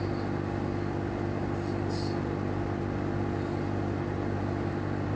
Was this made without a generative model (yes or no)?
yes